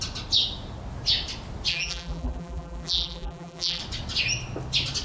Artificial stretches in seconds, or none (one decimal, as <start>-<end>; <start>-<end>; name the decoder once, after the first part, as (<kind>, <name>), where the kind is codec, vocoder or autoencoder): 1.7-3.8 (vocoder, BigVGAN v2)